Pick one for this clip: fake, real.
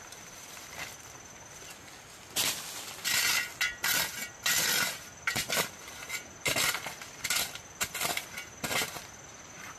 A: real